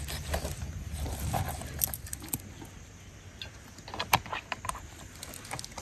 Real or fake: real